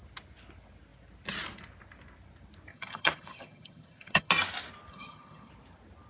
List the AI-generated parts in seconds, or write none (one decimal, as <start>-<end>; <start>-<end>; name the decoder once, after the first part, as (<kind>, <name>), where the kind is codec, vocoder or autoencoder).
2.7-4.3 (vocoder, HiFi-GAN); 4.9-5.5